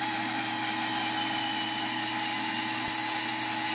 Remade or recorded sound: recorded